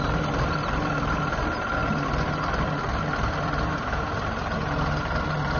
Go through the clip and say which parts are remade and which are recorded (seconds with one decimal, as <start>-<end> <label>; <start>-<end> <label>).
0.0-5.6 recorded